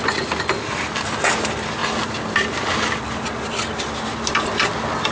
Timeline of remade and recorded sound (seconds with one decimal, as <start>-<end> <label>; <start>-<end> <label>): 0.0-5.1 recorded